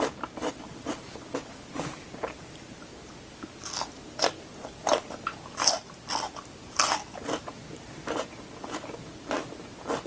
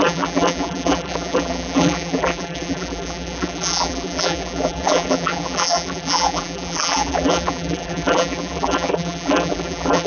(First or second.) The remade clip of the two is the second